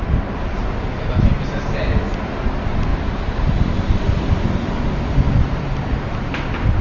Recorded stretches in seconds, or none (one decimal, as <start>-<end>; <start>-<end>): 0.0-2.9